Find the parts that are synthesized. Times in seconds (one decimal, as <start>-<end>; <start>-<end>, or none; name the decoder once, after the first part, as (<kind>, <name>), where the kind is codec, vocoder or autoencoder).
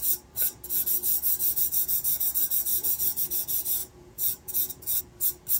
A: 1.4-2.3 (vocoder, Vocos); 3.8-5.0